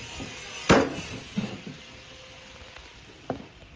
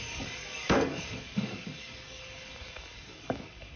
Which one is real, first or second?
first